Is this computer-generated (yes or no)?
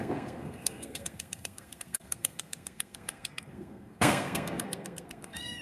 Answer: yes